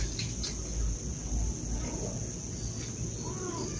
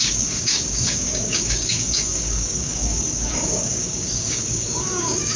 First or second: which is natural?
first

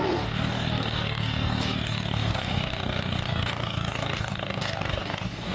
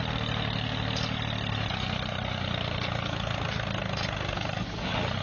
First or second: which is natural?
second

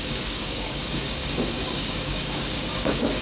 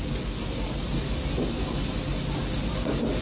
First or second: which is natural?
second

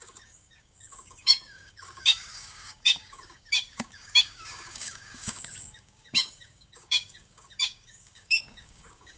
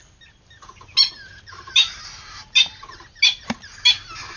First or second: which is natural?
second